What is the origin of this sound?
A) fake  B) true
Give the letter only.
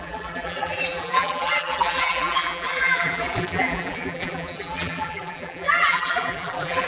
A